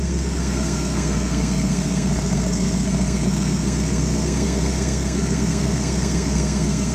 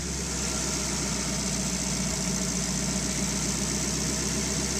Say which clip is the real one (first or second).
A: second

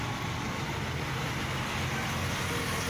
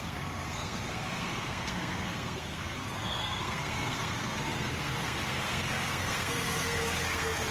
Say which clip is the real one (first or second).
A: first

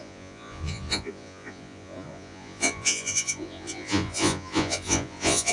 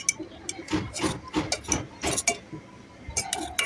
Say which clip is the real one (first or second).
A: second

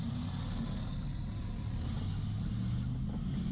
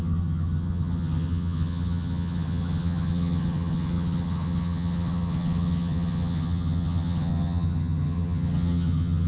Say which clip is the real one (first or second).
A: first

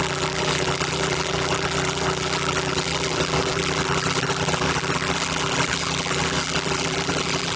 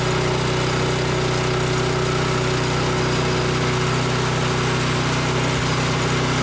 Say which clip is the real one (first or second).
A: second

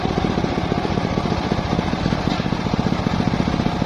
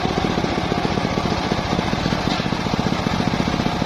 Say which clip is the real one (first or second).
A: second